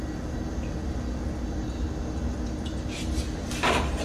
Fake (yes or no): no